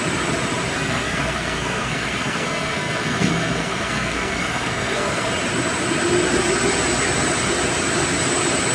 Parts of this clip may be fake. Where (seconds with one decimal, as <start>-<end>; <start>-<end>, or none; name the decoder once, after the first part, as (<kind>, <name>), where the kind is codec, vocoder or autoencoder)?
0.7-5.3 (codec, SNAC)